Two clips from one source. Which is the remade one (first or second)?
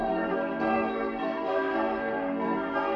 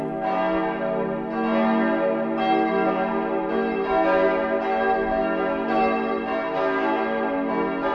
first